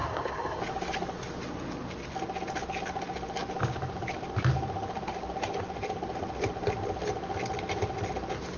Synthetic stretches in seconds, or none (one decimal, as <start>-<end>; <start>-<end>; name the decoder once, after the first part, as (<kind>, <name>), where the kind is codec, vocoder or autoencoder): 0.0-0.6 (codec, SNAC)